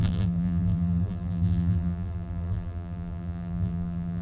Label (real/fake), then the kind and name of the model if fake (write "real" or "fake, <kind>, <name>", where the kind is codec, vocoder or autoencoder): fake, vocoder, BigVGAN v2